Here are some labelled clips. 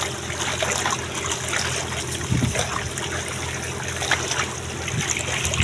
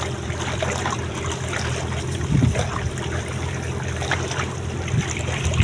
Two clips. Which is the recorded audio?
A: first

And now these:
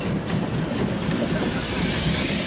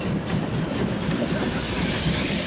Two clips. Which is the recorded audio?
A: first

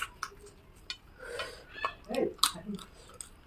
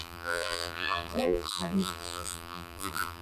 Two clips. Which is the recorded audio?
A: first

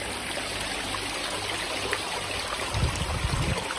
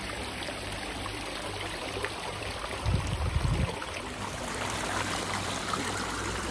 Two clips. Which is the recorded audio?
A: first